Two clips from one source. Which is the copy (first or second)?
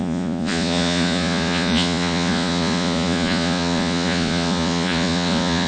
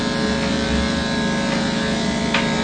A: first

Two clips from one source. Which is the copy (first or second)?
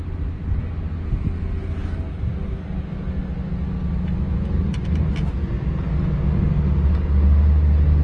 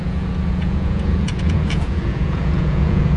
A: second